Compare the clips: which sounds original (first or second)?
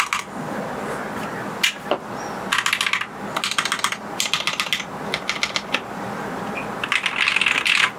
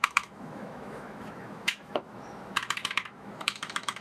first